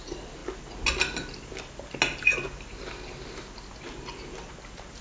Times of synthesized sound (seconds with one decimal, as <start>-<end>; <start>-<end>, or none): none